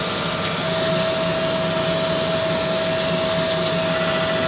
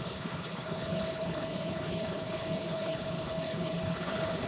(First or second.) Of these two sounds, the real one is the first